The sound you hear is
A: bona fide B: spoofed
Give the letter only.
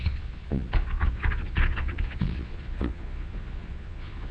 B